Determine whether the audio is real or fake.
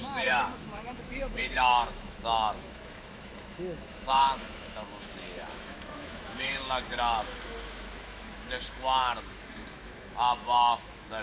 fake